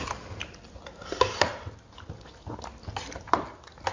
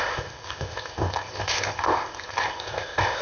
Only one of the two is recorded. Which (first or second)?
first